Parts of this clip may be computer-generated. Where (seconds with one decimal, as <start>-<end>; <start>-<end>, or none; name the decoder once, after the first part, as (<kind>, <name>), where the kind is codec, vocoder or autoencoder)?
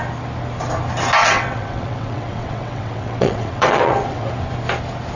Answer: 1.2-4.3 (vocoder, WaveNeXt)